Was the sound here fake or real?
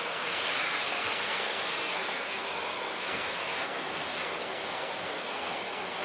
fake